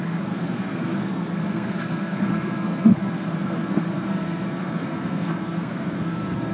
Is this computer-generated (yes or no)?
yes